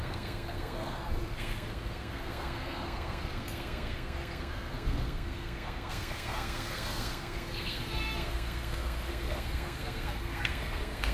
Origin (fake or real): fake